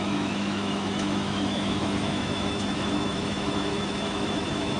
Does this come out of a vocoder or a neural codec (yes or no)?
yes